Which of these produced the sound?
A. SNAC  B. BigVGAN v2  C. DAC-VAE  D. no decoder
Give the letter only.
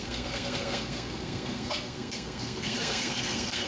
A